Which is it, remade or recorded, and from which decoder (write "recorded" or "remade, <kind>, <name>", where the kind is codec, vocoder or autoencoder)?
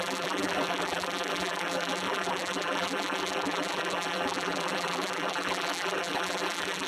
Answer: remade, vocoder, BigVGAN v2